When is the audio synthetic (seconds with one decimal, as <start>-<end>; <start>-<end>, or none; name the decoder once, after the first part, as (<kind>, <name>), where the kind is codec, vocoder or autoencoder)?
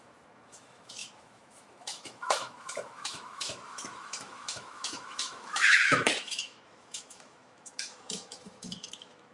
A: 0.0-9.3 (autoencoder, DAC-VAE)